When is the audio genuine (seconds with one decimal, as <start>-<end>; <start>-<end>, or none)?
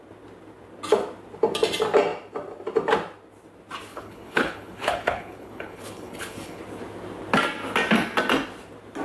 0.0-3.9; 6.6-9.0